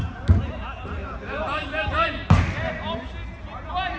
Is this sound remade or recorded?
recorded